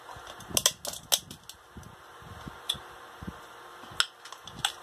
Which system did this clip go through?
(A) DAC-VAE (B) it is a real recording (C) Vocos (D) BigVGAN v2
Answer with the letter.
B